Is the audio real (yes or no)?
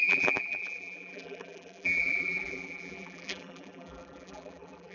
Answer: no